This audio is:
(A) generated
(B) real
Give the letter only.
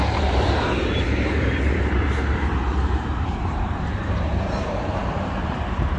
A